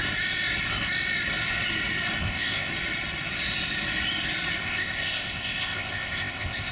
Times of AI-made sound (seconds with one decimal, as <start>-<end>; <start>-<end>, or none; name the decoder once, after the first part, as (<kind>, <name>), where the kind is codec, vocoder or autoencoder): 2.2-2.7 (codec, ZipCodec); 4.6-6.7